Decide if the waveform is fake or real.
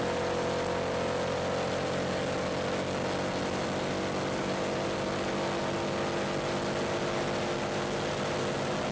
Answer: real